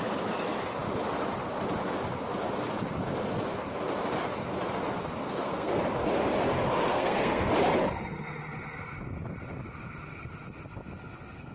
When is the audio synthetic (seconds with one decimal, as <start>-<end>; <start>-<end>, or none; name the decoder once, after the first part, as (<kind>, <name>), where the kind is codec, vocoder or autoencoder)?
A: 5.2-5.8 (codec, SNAC); 6.9-7.5